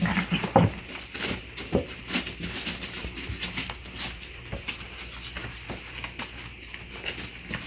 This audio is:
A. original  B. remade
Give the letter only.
A